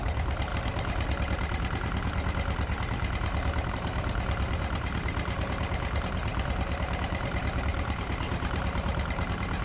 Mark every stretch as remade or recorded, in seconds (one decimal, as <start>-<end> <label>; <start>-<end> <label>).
0.0-0.5 remade; 0.5-3.7 recorded; 3.7-9.6 remade